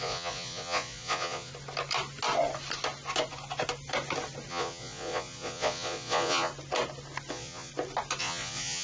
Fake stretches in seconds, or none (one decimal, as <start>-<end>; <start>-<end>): 0.0-1.5; 4.5-6.5; 7.3-7.7; 8.2-8.8